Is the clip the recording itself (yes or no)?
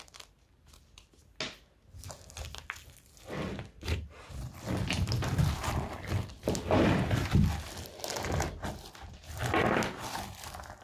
yes